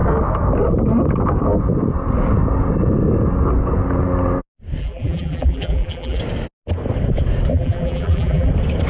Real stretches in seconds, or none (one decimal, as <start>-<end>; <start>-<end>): 0.0-4.8; 6.2-7.5; 8.5-8.9